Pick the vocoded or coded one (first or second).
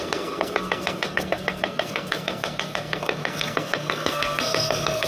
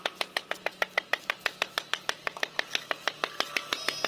first